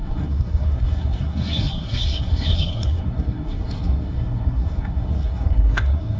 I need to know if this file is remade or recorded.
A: remade